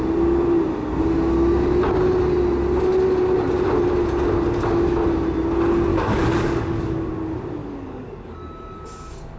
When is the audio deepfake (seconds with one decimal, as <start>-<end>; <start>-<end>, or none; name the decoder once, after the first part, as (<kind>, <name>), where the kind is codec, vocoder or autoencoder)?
5.9-7.1 (codec, DAC); 7.6-8.8